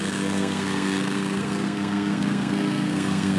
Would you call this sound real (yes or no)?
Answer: no